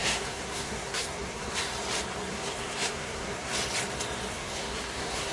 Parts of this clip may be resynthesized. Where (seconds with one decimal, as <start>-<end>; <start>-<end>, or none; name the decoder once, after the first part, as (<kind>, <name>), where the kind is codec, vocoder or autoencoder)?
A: 0.0-1.7 (codec, SNAC); 2.3-3.5; 4.3-5.3